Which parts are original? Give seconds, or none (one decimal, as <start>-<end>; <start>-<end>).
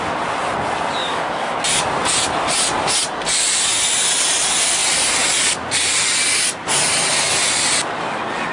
0.0-1.0; 1.6-8.5